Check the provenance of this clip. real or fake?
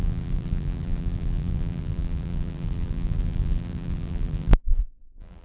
fake